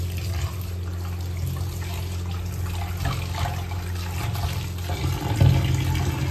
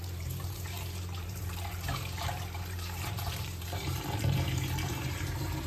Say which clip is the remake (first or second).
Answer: second